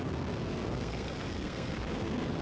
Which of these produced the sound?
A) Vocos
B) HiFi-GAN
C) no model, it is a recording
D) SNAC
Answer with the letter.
D